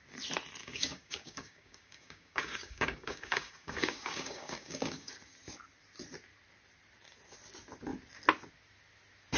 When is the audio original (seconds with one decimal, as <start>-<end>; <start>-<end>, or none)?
0.0-0.6; 5.1-9.4